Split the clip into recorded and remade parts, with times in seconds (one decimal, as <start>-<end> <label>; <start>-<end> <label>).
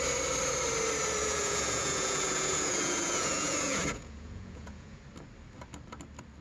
0.0-1.2 recorded; 1.2-5.0 remade; 5.0-6.4 recorded